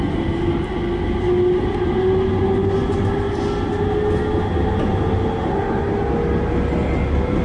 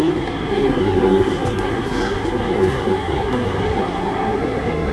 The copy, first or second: second